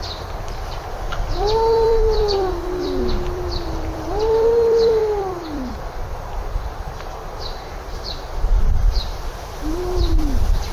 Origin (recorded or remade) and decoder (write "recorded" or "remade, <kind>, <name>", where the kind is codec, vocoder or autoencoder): remade, vocoder, BigVGAN v2